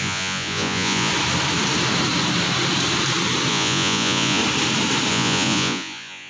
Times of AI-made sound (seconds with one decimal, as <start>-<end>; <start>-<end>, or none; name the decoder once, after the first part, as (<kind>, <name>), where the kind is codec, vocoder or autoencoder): 0.0-1.1 (vocoder, Vocos); 3.5-4.4; 5.1-6.3

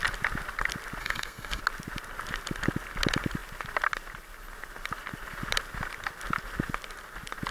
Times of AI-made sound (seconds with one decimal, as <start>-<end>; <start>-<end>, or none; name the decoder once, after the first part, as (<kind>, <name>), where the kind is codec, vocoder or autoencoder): 1.0-1.6 (codec, SNAC)

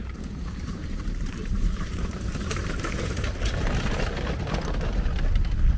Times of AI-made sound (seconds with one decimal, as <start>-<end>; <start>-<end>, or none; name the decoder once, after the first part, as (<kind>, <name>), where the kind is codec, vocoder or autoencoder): 0.0-3.5 (vocoder, BigVGAN v2)

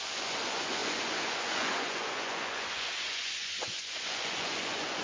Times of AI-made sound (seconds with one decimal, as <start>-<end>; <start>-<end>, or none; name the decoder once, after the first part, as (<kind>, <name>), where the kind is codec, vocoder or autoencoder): 0.0-5.0 (vocoder, Vocos)